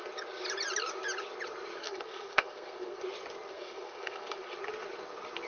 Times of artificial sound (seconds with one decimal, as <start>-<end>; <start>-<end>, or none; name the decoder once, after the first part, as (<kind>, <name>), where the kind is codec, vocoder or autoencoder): 1.8-3.0 (codec, SNAC); 3.5-4.4